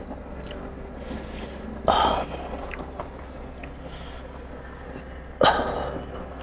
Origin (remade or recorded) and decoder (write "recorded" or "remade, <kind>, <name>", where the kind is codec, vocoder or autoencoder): recorded